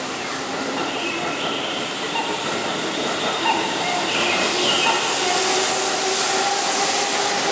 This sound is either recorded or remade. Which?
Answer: recorded